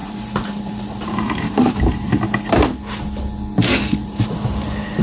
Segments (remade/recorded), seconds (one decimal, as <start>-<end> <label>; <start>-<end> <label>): 0.0-2.1 remade; 2.1-4.0 recorded; 4.0-4.6 remade; 4.6-5.0 recorded